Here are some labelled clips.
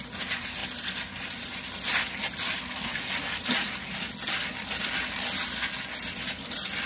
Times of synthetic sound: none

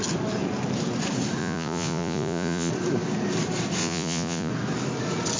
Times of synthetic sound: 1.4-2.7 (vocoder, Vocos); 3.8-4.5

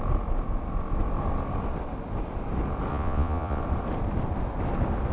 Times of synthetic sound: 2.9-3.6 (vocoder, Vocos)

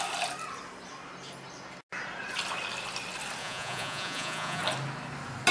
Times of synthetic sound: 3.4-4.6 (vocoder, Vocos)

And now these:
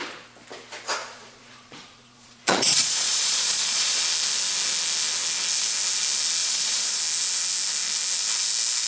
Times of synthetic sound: 1.0-4.0 (vocoder, Vocos); 6.4-7.0

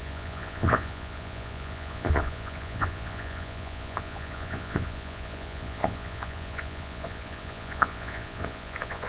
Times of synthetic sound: 0.0-9.1 (vocoder, Vocos)